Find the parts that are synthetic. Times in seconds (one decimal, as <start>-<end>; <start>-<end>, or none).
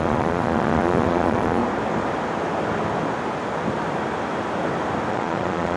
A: 0.0-1.6; 5.1-5.8